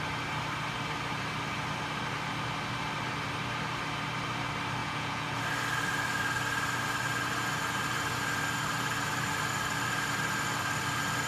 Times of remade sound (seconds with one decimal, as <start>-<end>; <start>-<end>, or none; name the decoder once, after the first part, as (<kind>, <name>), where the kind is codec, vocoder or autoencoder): 4.8-5.4 (vocoder, Vocos)